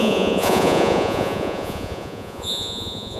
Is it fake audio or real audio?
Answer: fake